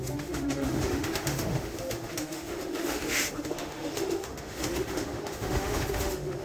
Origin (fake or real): fake